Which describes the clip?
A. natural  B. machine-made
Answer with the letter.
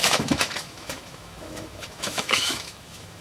B